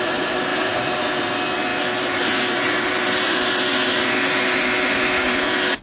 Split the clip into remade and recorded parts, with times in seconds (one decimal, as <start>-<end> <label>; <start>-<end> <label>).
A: 0.0-5.8 recorded